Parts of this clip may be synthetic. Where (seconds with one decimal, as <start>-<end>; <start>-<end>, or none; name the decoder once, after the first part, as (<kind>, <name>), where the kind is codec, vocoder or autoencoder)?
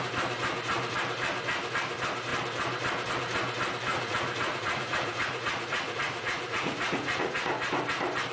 3.9-7.5 (vocoder, Vocos)